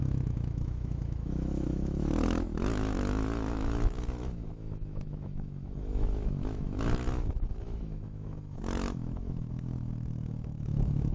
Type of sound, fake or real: fake